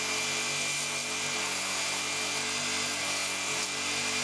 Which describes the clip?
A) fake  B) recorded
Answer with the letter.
B